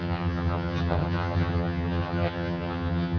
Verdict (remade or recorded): remade